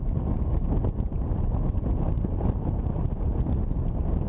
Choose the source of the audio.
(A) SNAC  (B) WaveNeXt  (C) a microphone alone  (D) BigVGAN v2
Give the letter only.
C